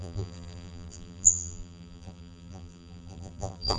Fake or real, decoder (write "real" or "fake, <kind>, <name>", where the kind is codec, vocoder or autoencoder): fake, vocoder, BigVGAN v2